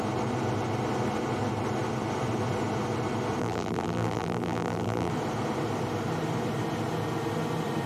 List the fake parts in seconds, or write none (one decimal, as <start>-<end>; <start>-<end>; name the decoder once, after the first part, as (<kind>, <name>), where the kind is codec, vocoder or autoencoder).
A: 3.4-5.1 (vocoder, BigVGAN v2)